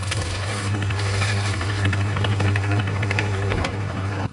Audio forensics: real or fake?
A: fake